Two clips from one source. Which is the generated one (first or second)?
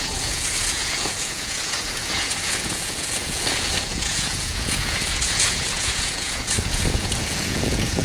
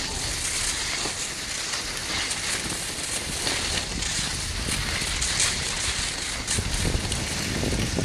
first